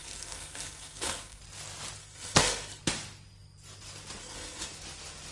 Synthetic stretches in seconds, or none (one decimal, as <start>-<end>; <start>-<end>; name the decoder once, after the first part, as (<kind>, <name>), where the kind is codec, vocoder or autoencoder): 0.0-1.4 (codec, SNAC); 2.0-2.8; 4.2-4.7